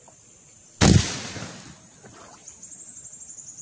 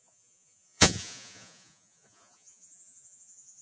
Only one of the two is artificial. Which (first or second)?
second